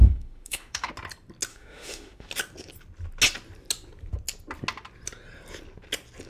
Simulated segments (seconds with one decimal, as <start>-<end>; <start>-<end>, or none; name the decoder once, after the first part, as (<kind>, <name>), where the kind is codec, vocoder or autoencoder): 0.0-0.9 (autoencoder, DAC-VAE); 1.5-2.3